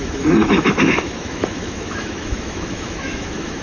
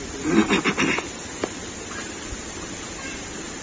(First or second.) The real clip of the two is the second